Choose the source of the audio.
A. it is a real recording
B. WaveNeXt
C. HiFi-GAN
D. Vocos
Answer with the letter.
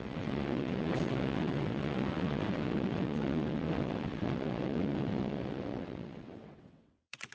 B